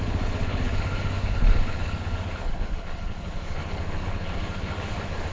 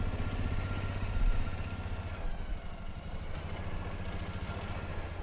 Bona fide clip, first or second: second